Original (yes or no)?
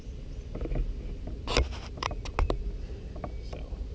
yes